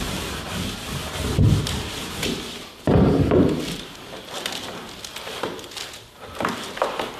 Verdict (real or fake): real